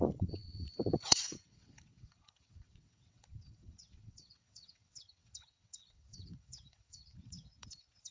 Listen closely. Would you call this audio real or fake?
fake